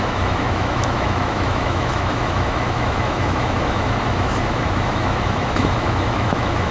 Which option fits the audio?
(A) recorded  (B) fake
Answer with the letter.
B